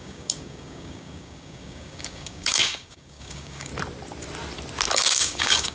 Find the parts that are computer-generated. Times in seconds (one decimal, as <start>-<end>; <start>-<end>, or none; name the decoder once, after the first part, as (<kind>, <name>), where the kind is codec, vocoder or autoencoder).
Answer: 0.0-3.7 (codec, DAC); 4.9-5.7